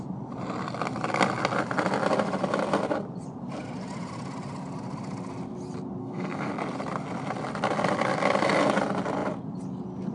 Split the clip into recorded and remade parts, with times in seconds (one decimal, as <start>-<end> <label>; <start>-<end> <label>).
0.0-6.0 recorded; 6.0-6.5 remade; 6.5-10.1 recorded

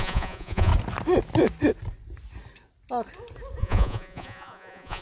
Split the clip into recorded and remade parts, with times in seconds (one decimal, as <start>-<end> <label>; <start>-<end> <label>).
0.0-0.7 remade; 0.7-3.6 recorded; 3.6-5.0 remade

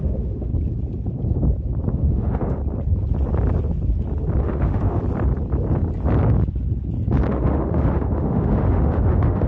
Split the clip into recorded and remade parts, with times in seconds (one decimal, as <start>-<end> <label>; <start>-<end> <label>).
0.0-0.5 remade; 0.5-1.9 recorded; 1.9-2.6 remade; 2.6-4.4 recorded; 4.4-5.0 remade; 5.0-7.3 recorded; 7.3-9.5 remade

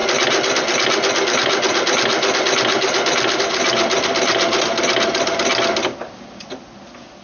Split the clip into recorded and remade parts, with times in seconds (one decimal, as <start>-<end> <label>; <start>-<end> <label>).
0.0-7.2 recorded

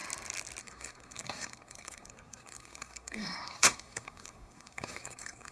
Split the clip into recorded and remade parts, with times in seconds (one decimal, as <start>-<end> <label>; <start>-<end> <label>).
0.0-0.6 recorded; 0.6-5.5 remade

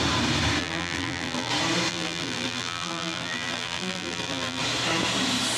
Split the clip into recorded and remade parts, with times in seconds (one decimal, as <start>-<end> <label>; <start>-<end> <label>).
0.0-0.6 recorded; 0.6-1.5 remade; 1.5-1.9 recorded; 1.9-4.6 remade; 4.6-5.6 recorded

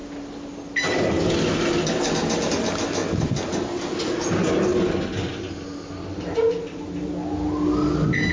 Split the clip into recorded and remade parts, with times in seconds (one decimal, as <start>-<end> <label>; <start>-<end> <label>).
0.0-8.3 recorded

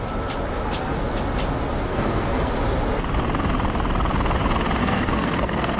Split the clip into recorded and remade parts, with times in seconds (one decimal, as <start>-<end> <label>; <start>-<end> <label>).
0.0-1.9 recorded; 1.9-2.5 remade; 2.5-4.8 recorded; 4.8-5.8 remade